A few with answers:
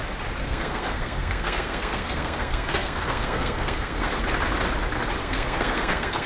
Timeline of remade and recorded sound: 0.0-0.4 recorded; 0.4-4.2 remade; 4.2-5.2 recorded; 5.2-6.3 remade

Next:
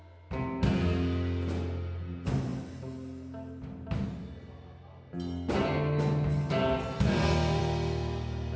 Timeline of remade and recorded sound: 0.0-8.6 recorded

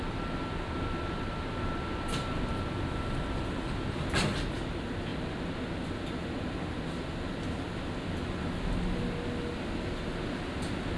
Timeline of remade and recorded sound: 0.0-11.0 recorded